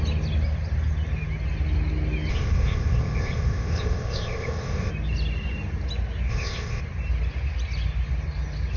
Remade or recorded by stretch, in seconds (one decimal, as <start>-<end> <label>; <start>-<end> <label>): 0.0-2.3 recorded; 2.3-4.9 remade; 4.9-6.3 recorded; 6.3-6.8 remade; 6.8-8.8 recorded